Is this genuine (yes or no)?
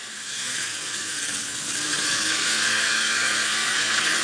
no